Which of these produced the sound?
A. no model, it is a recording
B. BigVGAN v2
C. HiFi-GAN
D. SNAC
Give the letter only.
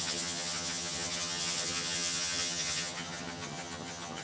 C